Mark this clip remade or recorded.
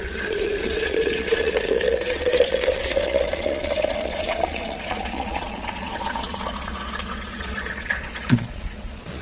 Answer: remade